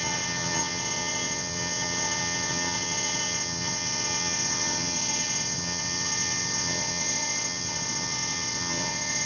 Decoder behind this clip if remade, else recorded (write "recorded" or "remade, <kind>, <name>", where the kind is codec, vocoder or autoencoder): remade, vocoder, Vocos